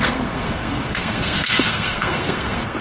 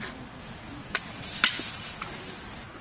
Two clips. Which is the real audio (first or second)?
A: second